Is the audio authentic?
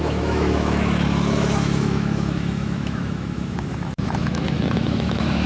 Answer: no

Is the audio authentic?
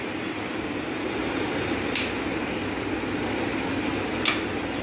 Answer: yes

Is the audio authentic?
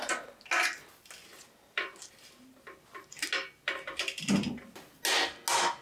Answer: yes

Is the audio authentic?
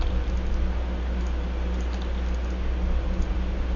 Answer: yes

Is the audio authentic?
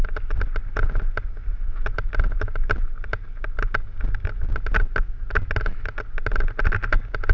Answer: yes